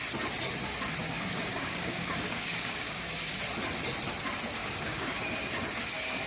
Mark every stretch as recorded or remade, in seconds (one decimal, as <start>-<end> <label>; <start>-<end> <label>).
0.0-1.0 recorded; 1.0-3.3 remade; 3.3-4.6 recorded; 4.6-5.2 remade; 5.2-6.3 recorded